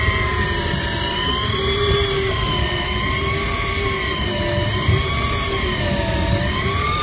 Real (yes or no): no